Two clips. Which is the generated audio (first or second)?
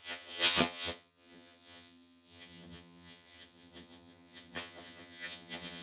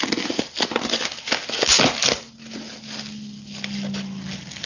first